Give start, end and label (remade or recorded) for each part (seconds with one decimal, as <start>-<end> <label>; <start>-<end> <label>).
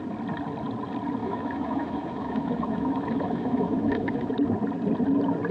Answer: 0.0-1.2 recorded; 1.2-4.3 remade; 4.3-5.5 recorded